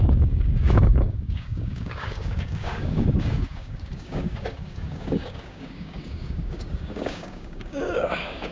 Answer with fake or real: fake